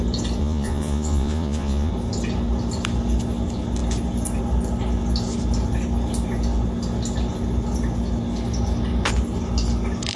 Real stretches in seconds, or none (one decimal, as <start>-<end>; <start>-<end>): 0.0-0.4; 1.9-10.2